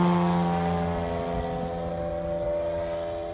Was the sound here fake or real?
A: real